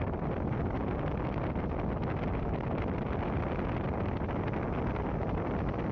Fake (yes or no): no